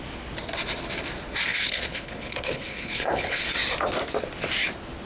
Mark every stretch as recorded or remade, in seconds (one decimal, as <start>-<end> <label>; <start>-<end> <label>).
0.0-1.5 recorded; 1.5-3.4 remade; 3.4-5.1 recorded